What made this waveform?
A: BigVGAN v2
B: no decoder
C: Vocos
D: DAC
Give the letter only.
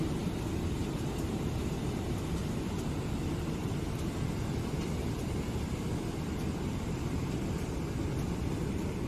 A